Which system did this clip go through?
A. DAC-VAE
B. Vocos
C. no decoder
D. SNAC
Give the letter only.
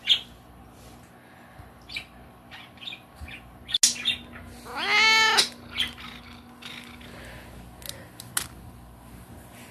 C